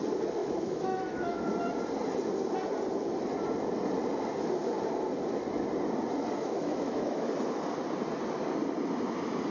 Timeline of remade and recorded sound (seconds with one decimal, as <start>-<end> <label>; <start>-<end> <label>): 0.0-0.4 recorded; 0.4-1.5 remade; 1.5-6.4 recorded; 6.4-7.3 remade; 7.3-9.5 recorded